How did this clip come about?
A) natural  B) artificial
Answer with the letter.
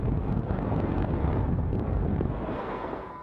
B